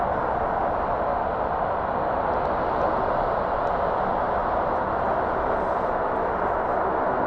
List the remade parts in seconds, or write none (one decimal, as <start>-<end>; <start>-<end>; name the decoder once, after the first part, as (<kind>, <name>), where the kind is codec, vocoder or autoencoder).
none